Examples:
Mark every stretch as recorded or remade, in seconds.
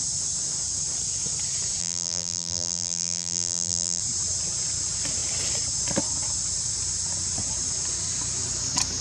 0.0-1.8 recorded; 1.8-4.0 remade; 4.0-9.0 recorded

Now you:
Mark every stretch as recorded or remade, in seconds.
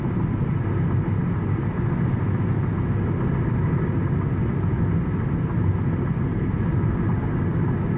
0.0-8.0 recorded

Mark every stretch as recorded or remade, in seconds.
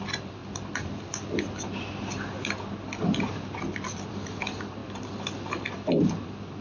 0.0-0.4 remade; 0.4-4.1 recorded; 4.1-6.6 remade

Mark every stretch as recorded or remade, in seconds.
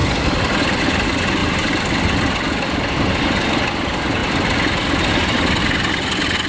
0.0-1.4 recorded; 1.4-2.0 remade; 2.0-6.5 recorded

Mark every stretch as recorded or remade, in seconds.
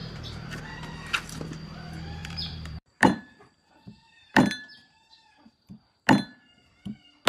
0.0-0.6 remade; 0.6-2.2 recorded; 2.2-6.0 remade; 6.0-7.3 recorded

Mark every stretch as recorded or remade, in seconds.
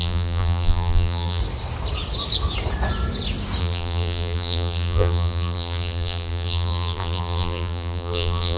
0.0-1.4 remade; 1.4-3.6 recorded; 3.6-8.6 remade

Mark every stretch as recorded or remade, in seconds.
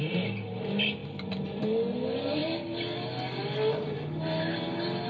0.0-1.0 recorded; 1.0-1.6 remade; 1.6-5.1 recorded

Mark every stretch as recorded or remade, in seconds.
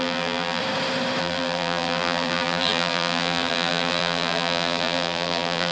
0.0-0.6 remade; 0.6-1.2 recorded; 1.2-5.7 remade